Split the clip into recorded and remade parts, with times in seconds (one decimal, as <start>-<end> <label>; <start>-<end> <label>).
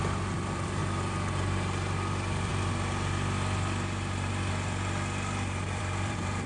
0.0-0.8 remade; 0.8-1.3 recorded; 1.3-2.5 remade; 2.5-5.8 recorded; 5.8-6.5 remade